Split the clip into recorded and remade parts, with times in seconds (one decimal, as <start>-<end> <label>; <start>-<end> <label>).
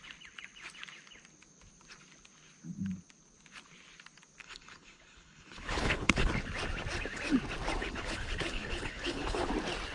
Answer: 0.0-4.4 recorded; 4.4-6.3 remade; 6.3-7.8 recorded; 7.8-9.5 remade; 9.5-9.9 recorded